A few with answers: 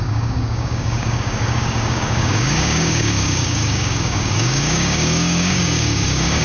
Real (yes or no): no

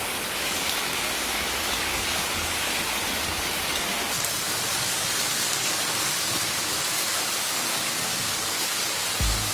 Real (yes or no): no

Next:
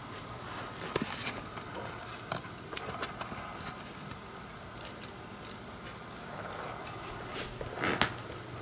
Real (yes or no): yes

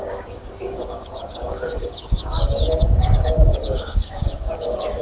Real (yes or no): no